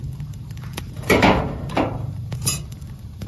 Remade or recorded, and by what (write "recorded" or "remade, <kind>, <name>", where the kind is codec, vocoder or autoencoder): remade, vocoder, BigVGAN v2